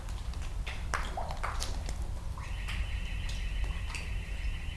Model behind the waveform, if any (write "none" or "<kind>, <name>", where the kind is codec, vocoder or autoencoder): none